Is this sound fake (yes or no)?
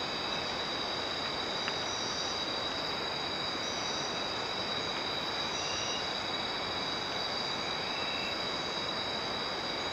no